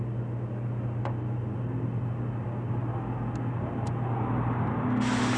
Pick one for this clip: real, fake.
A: real